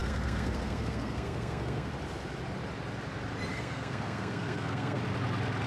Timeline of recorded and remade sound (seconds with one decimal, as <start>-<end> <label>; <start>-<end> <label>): 0.0-1.9 remade; 1.9-3.5 recorded; 3.5-5.0 remade; 5.0-5.7 recorded